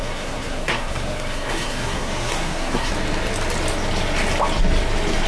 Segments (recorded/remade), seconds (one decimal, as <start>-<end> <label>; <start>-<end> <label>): 0.0-2.9 remade; 2.9-5.3 recorded